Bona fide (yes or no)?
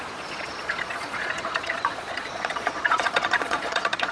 no